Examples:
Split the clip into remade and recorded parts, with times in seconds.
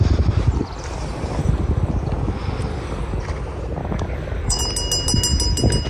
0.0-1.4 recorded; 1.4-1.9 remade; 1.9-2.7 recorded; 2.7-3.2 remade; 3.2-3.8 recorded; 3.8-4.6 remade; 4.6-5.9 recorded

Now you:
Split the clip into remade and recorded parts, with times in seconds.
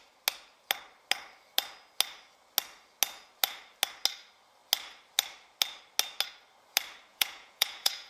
0.0-7.1 recorded; 7.1-8.1 remade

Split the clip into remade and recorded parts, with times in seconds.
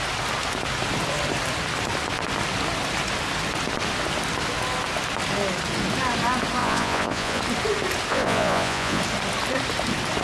0.0-6.6 recorded; 6.6-7.4 remade; 7.4-8.1 recorded; 8.1-9.0 remade; 9.0-10.2 recorded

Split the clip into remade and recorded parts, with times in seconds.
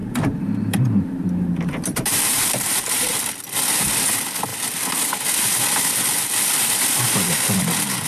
0.0-3.3 remade; 3.3-8.1 recorded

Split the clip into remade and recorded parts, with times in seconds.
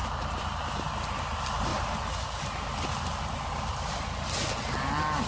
0.0-5.3 recorded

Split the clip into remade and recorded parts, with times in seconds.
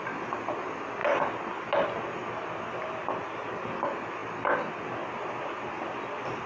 0.0-6.5 recorded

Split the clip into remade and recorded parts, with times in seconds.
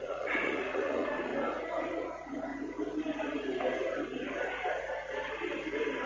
0.0-1.3 remade; 1.3-1.9 recorded; 1.9-2.5 remade; 2.5-6.1 recorded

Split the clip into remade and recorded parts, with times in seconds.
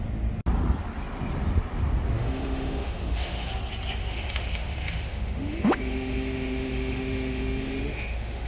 0.0-2.2 recorded; 2.2-3.5 remade; 3.5-4.0 recorded; 4.0-8.5 remade